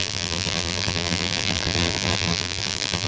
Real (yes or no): no